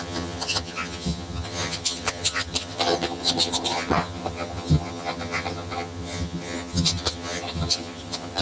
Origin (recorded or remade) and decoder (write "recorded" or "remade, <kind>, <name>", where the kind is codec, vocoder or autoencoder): remade, vocoder, HiFi-GAN